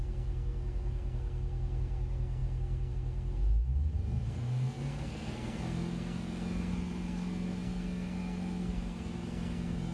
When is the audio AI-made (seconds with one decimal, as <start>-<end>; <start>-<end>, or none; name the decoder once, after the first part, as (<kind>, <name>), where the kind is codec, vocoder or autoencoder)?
0.0-9.9 (codec, SNAC)